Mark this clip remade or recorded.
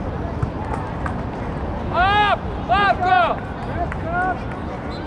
recorded